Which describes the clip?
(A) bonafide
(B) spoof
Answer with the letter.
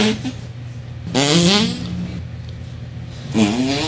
A